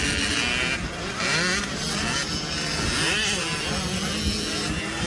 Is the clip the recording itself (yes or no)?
yes